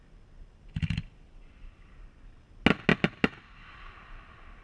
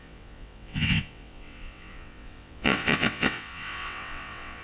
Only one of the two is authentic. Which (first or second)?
first